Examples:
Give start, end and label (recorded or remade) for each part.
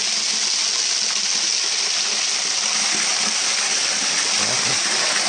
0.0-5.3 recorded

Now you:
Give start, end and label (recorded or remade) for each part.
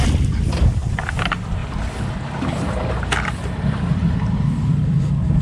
0.0-5.4 recorded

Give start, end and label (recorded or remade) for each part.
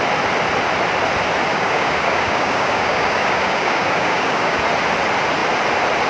0.0-1.5 recorded; 1.5-4.6 remade; 4.6-6.1 recorded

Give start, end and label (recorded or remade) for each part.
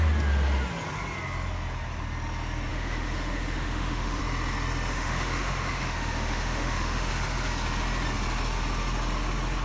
0.0-2.7 recorded; 2.7-4.2 remade; 4.2-4.9 recorded; 4.9-7.1 remade; 7.1-9.6 recorded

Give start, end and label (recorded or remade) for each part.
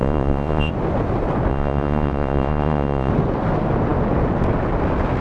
0.0-0.7 remade; 0.7-1.5 recorded; 1.5-3.1 remade; 3.1-5.2 recorded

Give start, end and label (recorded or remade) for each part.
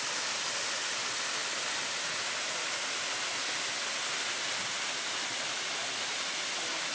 0.0-6.9 recorded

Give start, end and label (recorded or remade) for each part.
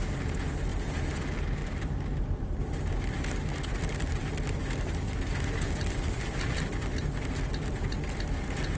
0.0-0.7 recorded; 0.7-1.2 remade; 1.2-1.6 recorded; 1.6-2.8 remade; 2.8-8.8 recorded